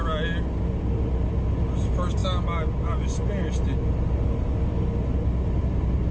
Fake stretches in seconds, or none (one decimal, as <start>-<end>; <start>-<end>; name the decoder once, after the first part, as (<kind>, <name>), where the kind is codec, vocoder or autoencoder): none